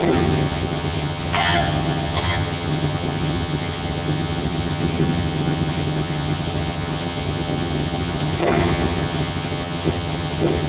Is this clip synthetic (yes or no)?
yes